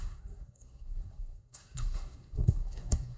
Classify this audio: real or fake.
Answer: fake